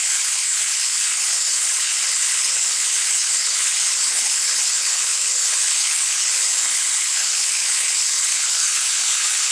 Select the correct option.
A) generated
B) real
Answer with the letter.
A